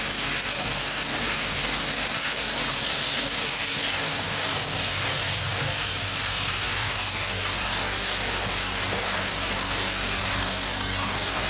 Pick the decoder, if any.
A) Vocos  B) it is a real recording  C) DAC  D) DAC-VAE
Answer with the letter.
C